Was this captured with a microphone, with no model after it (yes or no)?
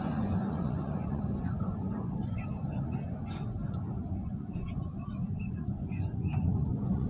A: no